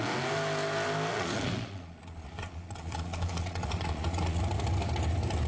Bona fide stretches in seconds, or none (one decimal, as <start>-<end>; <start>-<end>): 0.0-1.1; 4.4-5.5